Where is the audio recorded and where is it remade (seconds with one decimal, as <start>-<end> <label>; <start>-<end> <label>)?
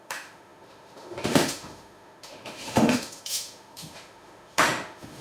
0.0-5.2 remade